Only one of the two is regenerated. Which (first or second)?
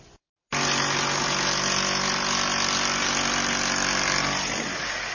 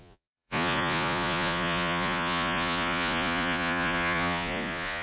second